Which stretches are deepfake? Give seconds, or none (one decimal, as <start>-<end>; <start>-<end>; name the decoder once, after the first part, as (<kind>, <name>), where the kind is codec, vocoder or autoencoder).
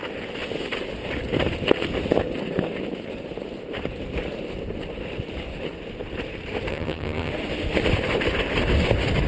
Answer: 6.7-7.3 (vocoder, HiFi-GAN)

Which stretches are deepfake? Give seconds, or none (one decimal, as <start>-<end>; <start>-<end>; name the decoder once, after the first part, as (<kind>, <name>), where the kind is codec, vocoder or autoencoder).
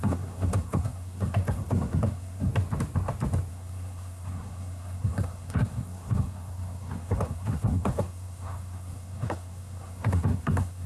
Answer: 0.0-2.5 (codec, SNAC); 3.5-10.9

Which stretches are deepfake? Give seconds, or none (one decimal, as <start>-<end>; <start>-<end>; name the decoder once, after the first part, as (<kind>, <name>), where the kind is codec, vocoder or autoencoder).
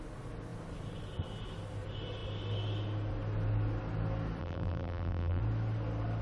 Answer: 4.4-5.4 (vocoder, BigVGAN v2)